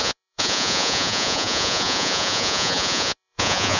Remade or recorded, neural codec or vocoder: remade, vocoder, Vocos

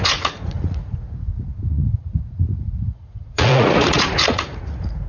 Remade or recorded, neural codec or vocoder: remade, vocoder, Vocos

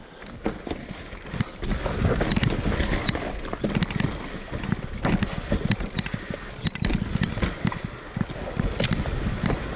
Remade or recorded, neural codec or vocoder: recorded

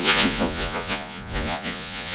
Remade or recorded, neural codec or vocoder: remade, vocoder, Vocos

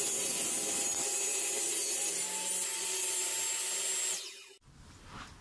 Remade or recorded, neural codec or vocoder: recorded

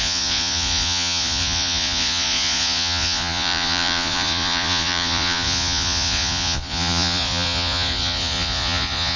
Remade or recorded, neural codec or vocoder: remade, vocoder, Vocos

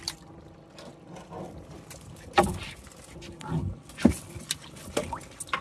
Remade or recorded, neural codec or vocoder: recorded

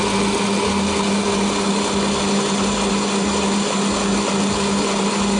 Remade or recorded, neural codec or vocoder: recorded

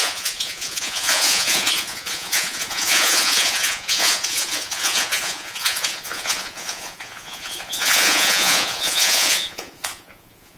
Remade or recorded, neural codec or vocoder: remade, vocoder, Vocos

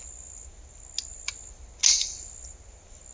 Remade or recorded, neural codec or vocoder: recorded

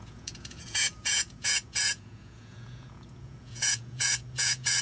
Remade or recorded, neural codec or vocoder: remade, vocoder, Vocos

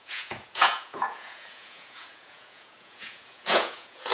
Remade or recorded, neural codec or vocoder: remade, vocoder, Vocos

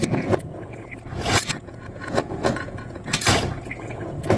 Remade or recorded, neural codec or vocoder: remade, vocoder, Vocos